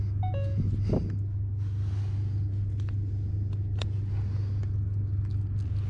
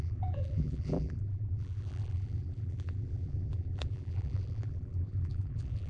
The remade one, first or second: second